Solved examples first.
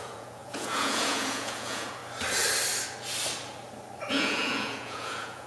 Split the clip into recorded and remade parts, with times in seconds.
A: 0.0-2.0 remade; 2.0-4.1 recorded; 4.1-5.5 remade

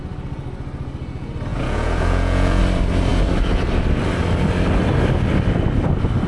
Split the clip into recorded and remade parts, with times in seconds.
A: 0.0-1.5 recorded; 1.5-2.6 remade; 2.6-6.3 recorded